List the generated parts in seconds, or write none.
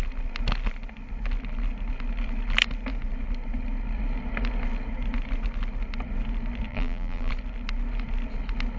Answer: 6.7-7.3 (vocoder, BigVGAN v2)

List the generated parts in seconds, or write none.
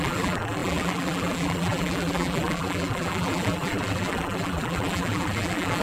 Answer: 0.0-5.8 (vocoder, BigVGAN v2)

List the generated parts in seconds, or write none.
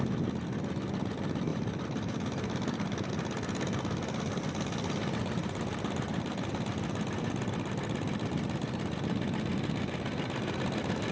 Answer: 1.5-3.1 (vocoder, BigVGAN v2); 5.2-6.5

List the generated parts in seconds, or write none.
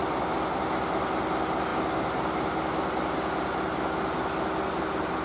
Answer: none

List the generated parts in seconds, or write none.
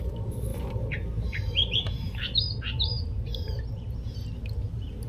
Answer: 0.0-5.1 (vocoder, BigVGAN v2)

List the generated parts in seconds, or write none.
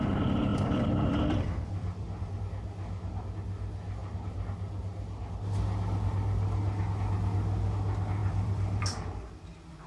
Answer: 0.5-2.4 (vocoder, BigVGAN v2); 8.2-8.8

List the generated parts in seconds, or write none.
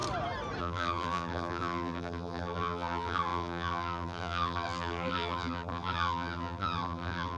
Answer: 0.6-7.4 (vocoder, BigVGAN v2)